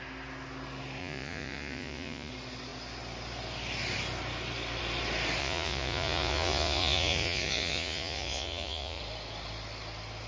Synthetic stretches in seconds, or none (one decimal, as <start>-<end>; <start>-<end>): 1.0-2.3; 5.4-9.0